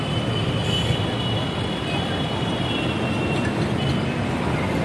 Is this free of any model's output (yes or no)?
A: yes